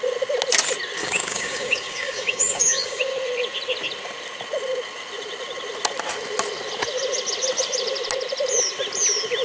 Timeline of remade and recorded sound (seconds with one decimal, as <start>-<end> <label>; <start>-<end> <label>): 0.0-1.0 recorded; 1.0-3.0 remade; 3.0-9.4 recorded